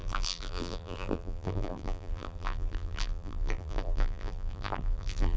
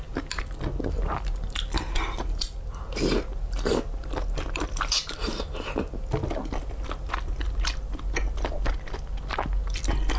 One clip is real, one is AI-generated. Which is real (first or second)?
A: second